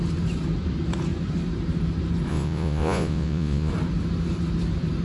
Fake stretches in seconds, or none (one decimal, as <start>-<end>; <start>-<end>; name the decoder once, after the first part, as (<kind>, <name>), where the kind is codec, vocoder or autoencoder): 2.3-3.7 (vocoder, Vocos)